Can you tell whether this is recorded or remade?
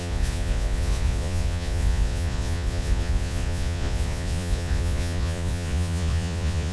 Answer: remade